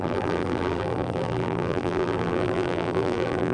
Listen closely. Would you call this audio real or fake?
fake